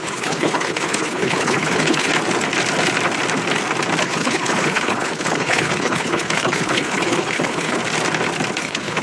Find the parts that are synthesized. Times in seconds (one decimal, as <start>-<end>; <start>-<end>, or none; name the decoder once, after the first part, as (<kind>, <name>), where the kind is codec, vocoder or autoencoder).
0.0-2.1 (codec, HILCodec); 4.0-7.8; 8.6-9.0